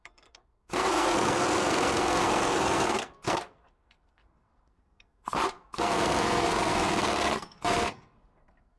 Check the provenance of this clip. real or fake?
fake